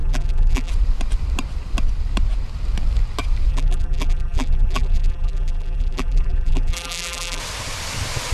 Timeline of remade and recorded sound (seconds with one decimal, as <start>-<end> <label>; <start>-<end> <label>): 0.0-0.7 remade; 0.7-3.5 recorded; 3.5-7.4 remade; 7.4-8.3 recorded